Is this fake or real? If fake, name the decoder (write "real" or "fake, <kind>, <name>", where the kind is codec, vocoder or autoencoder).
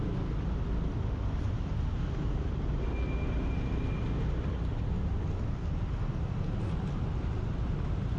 real